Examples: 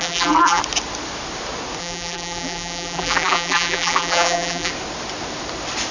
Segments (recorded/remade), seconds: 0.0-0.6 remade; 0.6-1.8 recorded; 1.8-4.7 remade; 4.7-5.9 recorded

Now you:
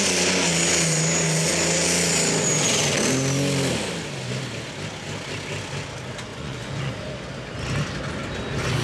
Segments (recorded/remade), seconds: 0.0-6.3 recorded; 6.3-6.9 remade; 6.9-8.8 recorded

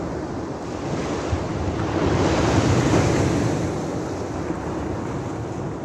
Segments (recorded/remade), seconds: 0.0-5.8 recorded

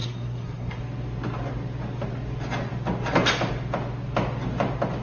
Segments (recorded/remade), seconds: 0.0-0.8 remade; 0.8-5.0 recorded

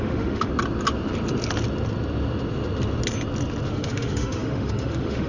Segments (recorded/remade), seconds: 0.0-0.5 remade; 0.5-3.7 recorded; 3.7-5.3 remade

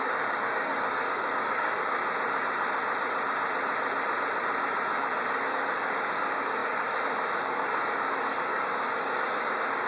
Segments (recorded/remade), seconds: 0.0-2.0 remade; 2.0-5.5 recorded; 5.5-9.9 remade

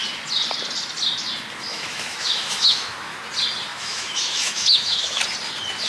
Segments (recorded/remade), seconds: 0.0-1.7 recorded; 1.7-3.2 remade; 3.2-3.7 recorded; 3.7-5.2 remade; 5.2-5.9 recorded